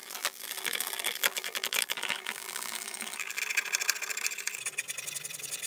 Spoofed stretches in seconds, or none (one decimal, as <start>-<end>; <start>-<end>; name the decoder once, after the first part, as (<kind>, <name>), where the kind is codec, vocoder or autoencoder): 0.0-3.4 (vocoder, BigVGAN v2)